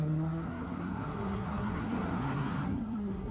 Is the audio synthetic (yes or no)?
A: yes